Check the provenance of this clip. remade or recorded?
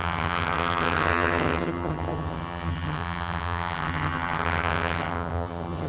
remade